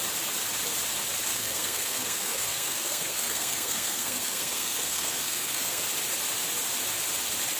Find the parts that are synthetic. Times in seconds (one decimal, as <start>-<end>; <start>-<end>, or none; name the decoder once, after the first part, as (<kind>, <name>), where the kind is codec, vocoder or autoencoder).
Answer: 1.3-5.8 (codec, SNAC)